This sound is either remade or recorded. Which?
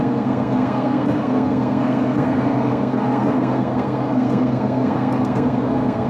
remade